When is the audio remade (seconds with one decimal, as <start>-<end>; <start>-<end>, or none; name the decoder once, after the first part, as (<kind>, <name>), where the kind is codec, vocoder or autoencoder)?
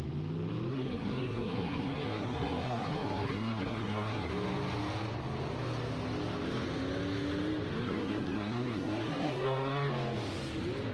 0.7-4.3 (codec, SNAC); 7.8-9.9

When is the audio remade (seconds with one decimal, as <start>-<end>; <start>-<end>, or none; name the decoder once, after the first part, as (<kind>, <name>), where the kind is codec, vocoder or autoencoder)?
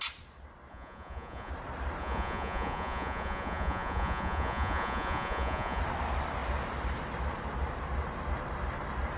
0.7-1.5 (vocoder, Vocos); 2.0-5.8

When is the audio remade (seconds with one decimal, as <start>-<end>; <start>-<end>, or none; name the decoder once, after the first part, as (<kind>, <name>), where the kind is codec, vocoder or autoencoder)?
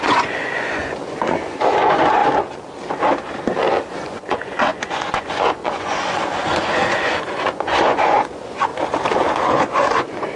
0.0-2.2 (vocoder, Vocos); 3.9-8.7; 9.5-10.4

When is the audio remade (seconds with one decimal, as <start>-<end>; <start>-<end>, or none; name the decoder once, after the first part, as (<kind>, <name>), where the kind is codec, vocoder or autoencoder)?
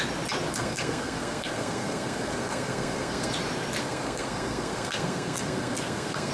0.5-3.3 (codec, SNAC); 3.8-6.3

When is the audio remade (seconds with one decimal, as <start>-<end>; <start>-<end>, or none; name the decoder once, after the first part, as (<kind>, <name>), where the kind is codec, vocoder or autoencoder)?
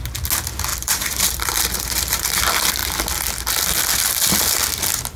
0.7-2.4 (vocoder, BigVGAN v2)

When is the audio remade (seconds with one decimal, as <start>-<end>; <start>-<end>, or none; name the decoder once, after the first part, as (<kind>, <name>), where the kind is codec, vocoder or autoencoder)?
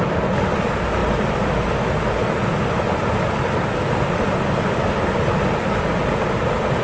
none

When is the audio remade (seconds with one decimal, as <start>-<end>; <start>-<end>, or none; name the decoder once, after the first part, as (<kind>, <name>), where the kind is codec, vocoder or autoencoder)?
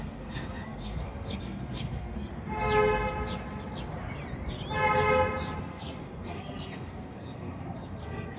0.0-2.3 (codec, SNAC); 5.6-8.4